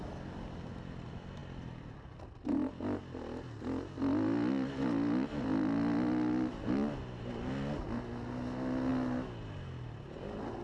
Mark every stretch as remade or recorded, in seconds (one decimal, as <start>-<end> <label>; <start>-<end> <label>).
0.0-10.6 recorded